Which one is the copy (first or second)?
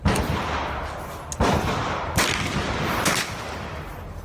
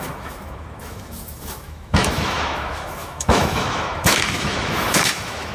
second